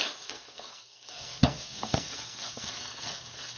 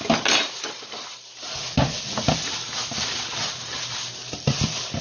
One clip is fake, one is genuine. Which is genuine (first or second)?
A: second